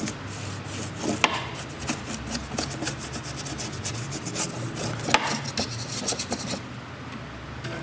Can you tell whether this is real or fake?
real